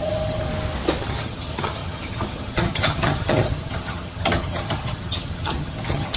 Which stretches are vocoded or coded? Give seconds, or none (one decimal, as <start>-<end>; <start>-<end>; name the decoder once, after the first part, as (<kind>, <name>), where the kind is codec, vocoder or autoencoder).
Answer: 0.0-0.5 (vocoder, HiFi-GAN); 1.0-6.2